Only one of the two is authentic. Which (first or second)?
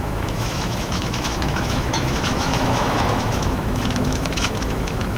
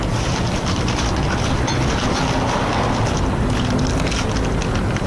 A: second